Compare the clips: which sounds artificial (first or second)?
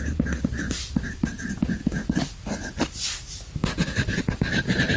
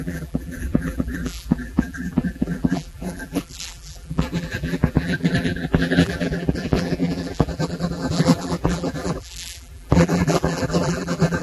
second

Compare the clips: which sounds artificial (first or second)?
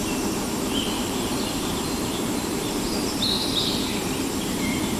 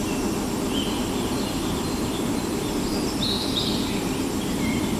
first